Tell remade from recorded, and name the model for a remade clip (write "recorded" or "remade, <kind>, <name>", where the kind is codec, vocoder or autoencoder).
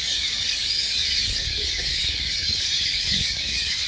remade, codec, DAC